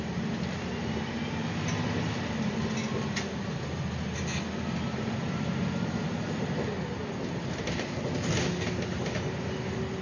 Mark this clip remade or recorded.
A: recorded